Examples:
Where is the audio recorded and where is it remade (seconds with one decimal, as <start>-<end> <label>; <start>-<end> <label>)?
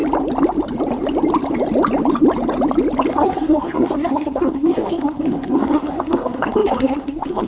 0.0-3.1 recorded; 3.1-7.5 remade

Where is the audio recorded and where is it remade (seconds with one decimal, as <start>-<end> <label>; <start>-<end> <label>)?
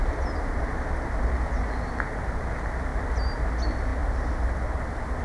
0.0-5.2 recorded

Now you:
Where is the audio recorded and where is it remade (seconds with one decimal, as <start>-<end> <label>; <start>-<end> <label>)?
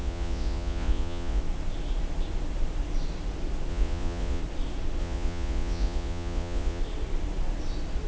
0.0-1.4 remade; 1.4-3.7 recorded; 3.7-4.4 remade; 4.4-5.0 recorded; 5.0-6.8 remade; 6.8-8.1 recorded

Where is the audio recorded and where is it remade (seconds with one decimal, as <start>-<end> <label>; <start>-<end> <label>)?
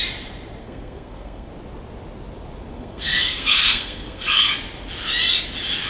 0.0-0.6 recorded; 0.6-1.5 remade; 1.5-2.7 recorded; 2.7-4.5 remade; 4.5-5.9 recorded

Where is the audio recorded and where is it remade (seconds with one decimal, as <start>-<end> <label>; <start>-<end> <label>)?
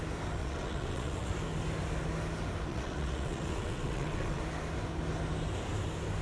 0.0-0.4 recorded; 0.4-1.3 remade; 1.3-2.7 recorded; 2.7-4.4 remade; 4.4-6.2 recorded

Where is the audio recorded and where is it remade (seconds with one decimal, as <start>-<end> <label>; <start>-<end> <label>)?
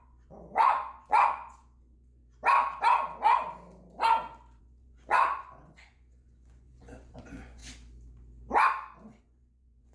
0.0-2.2 remade; 2.2-4.6 recorded; 4.6-7.6 remade; 7.6-9.2 recorded; 9.2-9.9 remade